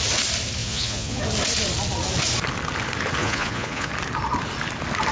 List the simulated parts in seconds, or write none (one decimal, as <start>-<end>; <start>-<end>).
0.6-1.2; 3.2-3.9